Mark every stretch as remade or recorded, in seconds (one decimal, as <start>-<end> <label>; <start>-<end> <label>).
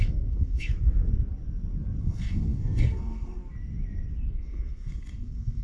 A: 0.0-0.7 remade; 0.7-2.0 recorded; 2.0-3.4 remade; 3.4-4.3 recorded; 4.3-5.6 remade